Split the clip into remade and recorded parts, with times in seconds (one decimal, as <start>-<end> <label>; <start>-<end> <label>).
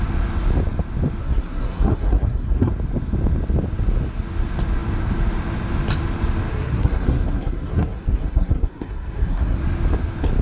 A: 0.0-1.2 recorded; 1.2-2.7 remade; 2.7-6.5 recorded; 6.5-9.6 remade; 9.6-10.4 recorded